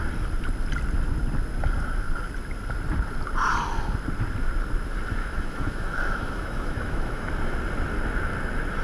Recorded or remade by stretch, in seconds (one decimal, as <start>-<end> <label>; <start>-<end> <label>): 0.0-5.2 recorded; 5.2-7.3 remade; 7.3-8.8 recorded